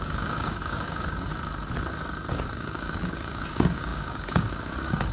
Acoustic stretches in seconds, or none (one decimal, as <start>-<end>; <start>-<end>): 1.3-2.3